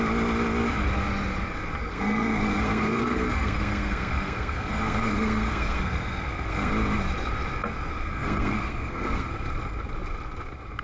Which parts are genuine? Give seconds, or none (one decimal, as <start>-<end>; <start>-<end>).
0.0-1.9; 6.7-7.9; 9.3-10.8